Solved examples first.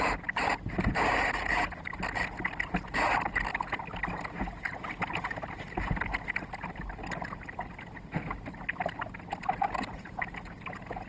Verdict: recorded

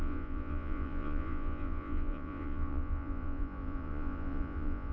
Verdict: remade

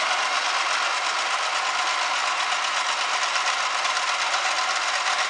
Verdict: recorded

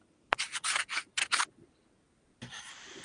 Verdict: recorded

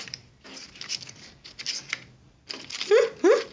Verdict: recorded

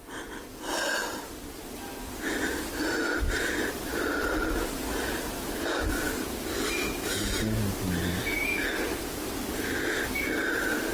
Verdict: recorded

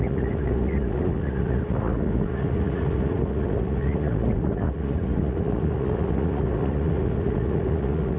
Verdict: remade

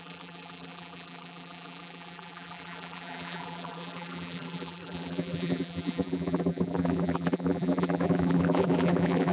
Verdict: remade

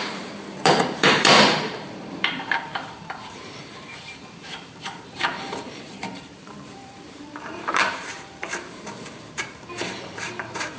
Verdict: remade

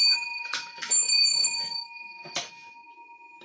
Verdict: remade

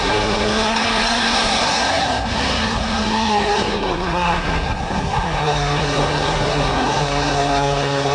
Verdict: remade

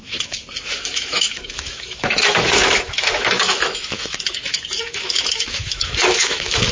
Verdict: remade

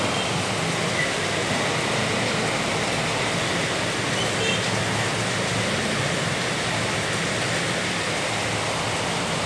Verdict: recorded